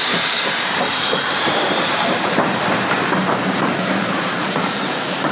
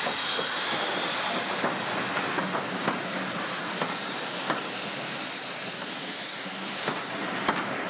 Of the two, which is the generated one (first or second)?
first